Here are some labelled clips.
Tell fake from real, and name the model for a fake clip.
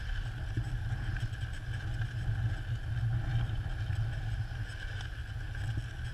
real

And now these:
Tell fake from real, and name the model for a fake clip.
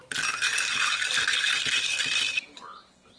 real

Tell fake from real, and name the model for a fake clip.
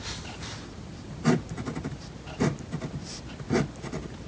real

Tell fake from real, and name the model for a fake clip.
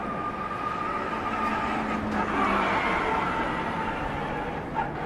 real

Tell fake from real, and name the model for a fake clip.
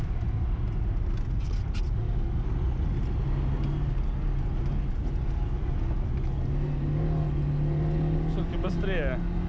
real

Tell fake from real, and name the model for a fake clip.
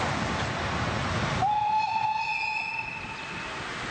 real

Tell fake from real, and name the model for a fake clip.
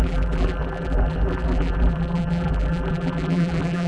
fake, vocoder, BigVGAN v2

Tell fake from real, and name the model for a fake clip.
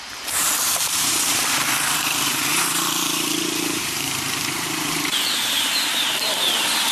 fake, vocoder, BigVGAN v2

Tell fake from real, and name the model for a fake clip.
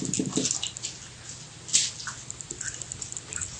real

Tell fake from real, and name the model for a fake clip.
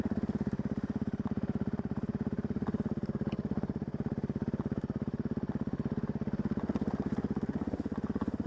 fake, vocoder, BigVGAN v2